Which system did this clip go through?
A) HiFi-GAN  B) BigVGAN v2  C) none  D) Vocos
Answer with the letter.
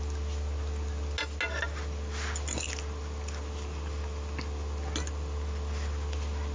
C